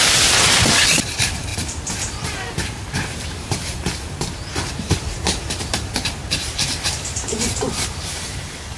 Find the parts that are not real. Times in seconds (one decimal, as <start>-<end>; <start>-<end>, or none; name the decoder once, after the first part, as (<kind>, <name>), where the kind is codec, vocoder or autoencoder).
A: 0.9-8.8 (vocoder, BigVGAN v2)

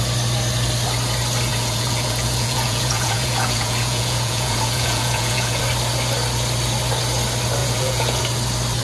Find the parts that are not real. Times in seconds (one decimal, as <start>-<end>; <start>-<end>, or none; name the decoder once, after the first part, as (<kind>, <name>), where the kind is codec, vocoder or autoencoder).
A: 1.5-5.6 (vocoder, Vocos); 7.6-8.2

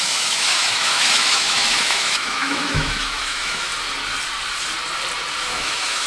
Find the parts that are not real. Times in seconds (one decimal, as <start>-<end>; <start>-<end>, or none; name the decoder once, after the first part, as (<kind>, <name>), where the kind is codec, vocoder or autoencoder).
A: 0.0-3.7 (autoencoder, DAC-VAE); 5.4-6.1